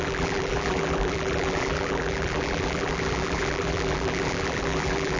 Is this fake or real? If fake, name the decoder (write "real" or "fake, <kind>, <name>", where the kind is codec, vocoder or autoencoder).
fake, vocoder, BigVGAN v2